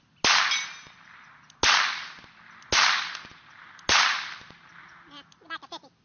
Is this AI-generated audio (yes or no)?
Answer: no